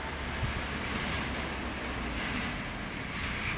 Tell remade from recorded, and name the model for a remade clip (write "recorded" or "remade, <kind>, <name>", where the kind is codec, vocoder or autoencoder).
recorded